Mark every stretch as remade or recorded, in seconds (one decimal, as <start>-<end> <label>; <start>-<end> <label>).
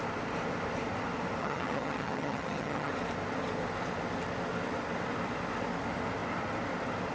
0.0-1.4 recorded; 1.4-2.9 remade; 2.9-7.1 recorded